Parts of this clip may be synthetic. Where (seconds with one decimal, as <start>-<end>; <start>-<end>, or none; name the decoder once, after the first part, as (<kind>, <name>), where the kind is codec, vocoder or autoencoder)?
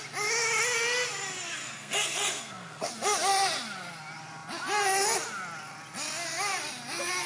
1.6-2.9 (codec, SNAC)